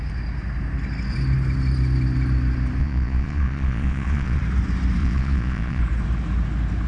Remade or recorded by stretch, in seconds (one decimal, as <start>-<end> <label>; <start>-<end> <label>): 0.0-2.8 recorded; 2.8-4.4 remade; 4.4-5.0 recorded; 5.0-5.8 remade; 5.8-6.9 recorded